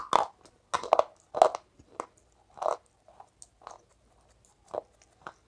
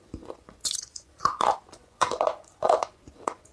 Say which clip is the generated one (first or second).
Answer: second